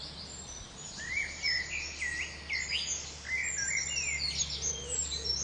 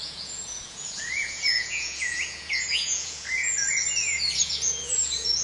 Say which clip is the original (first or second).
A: first